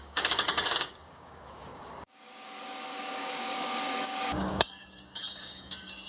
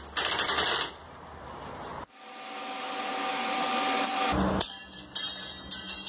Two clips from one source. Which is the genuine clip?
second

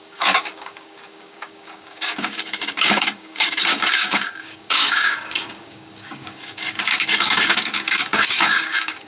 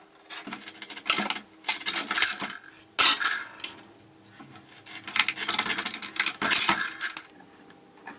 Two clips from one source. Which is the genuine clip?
second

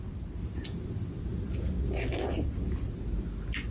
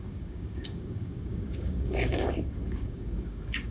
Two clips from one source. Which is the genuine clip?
first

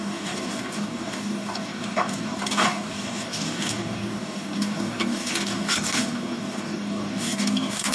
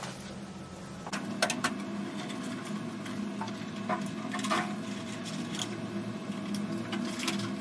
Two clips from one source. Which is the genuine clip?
second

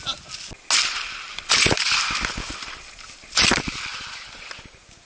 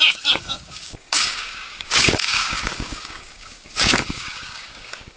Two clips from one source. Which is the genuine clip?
first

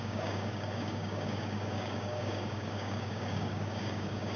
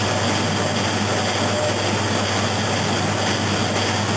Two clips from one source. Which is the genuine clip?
second